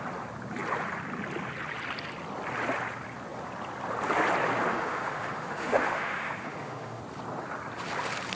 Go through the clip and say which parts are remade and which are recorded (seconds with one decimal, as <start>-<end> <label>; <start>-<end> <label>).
0.0-4.7 recorded; 4.7-7.0 remade; 7.0-8.4 recorded